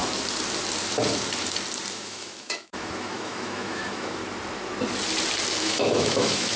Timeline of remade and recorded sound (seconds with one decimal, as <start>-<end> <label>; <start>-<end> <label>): 0.0-1.9 recorded; 1.9-4.2 remade; 4.2-5.6 recorded; 5.6-6.6 remade